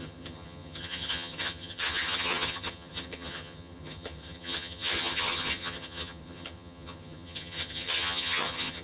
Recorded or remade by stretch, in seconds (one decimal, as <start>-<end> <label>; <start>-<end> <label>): 0.0-8.8 remade